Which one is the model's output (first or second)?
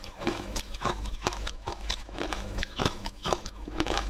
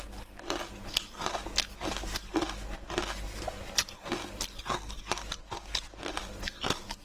first